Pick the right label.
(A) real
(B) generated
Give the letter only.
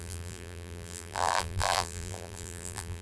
B